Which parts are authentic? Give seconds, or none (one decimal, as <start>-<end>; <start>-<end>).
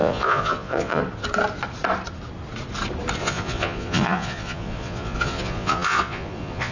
1.0-3.2